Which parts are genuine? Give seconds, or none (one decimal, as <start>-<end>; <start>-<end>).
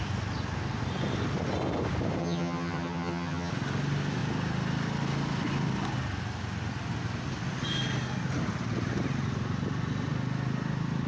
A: 0.0-2.2; 3.5-11.1